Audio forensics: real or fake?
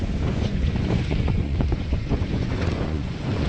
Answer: fake